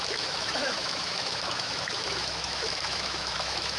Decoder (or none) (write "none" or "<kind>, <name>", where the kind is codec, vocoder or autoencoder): autoencoder, DAC-VAE